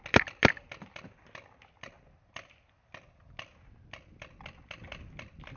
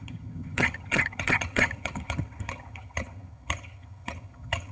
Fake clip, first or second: second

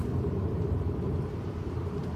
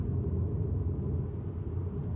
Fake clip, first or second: first